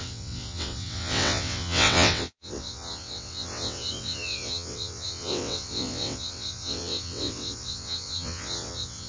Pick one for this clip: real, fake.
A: fake